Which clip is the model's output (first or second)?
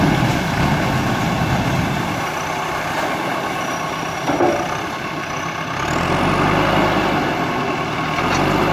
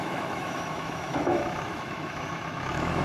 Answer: second